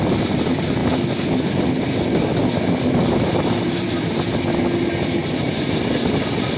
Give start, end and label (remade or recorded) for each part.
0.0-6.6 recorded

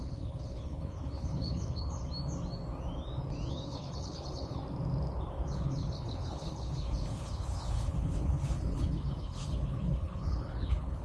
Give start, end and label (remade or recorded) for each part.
0.0-2.0 remade; 2.0-3.5 recorded; 3.5-4.6 remade; 4.6-5.5 recorded; 5.5-11.0 remade

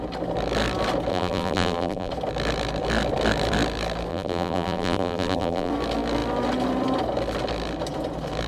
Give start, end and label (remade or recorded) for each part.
0.0-1.1 recorded; 1.1-2.1 remade; 2.1-4.1 recorded; 4.1-5.7 remade; 5.7-8.5 recorded

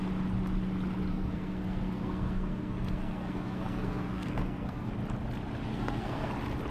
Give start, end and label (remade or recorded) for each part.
0.0-1.1 recorded; 1.1-4.9 remade; 4.9-5.7 recorded; 5.7-6.3 remade; 6.3-6.7 recorded

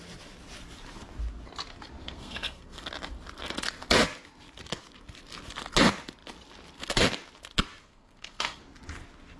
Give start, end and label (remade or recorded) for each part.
0.0-2.0 recorded; 2.0-2.9 remade; 2.9-7.8 recorded; 7.8-8.6 remade; 8.6-9.4 recorded

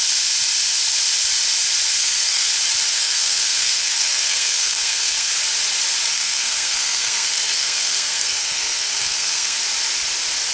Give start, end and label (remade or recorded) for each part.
0.0-2.0 recorded; 2.0-2.5 remade; 2.5-2.9 recorded; 2.9-5.3 remade; 5.3-6.1 recorded; 6.1-9.6 remade; 9.6-10.5 recorded

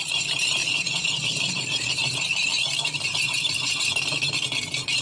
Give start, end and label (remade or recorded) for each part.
0.0-0.6 recorded; 0.6-1.9 remade; 1.9-5.0 recorded